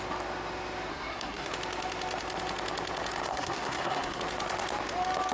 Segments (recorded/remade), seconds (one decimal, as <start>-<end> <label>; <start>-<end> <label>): 0.0-0.9 recorded; 0.9-1.5 remade; 1.5-3.3 recorded; 3.3-4.2 remade; 4.2-5.3 recorded